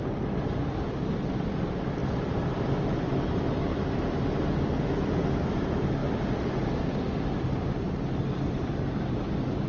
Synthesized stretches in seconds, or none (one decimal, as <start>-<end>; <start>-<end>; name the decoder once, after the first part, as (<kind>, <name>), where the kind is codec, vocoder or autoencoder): none